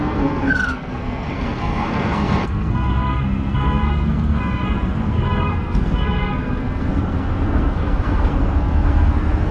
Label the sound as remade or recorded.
remade